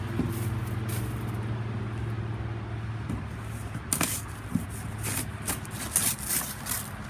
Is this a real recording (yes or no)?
yes